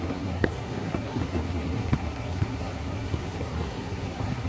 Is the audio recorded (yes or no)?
no